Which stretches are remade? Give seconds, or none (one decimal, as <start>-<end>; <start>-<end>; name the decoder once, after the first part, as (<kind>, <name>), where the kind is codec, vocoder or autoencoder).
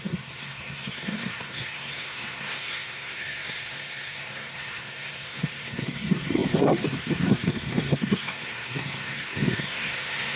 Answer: 0.0-10.4 (codec, SNAC)